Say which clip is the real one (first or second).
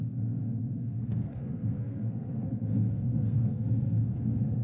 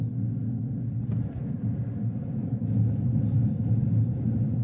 second